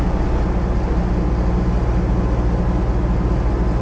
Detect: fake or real real